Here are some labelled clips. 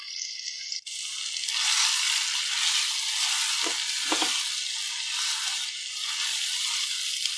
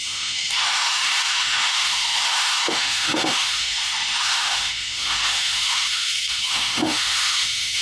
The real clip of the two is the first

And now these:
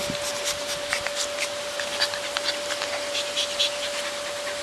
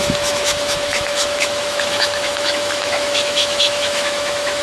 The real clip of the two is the first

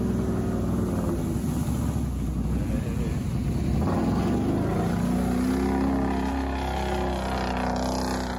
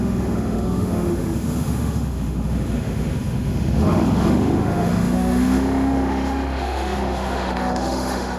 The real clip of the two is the first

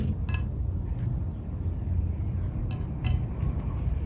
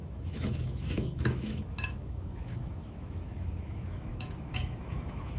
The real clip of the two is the first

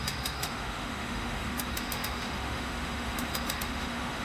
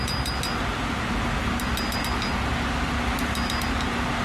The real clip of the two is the second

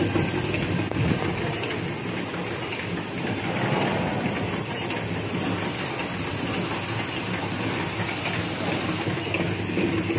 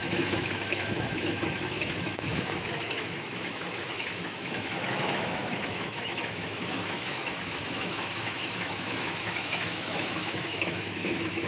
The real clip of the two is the first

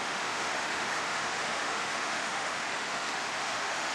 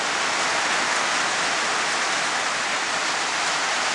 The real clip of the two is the second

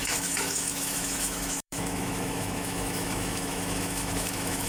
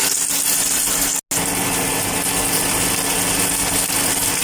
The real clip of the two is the second